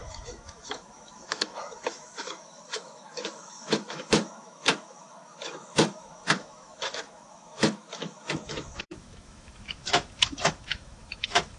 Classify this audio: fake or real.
fake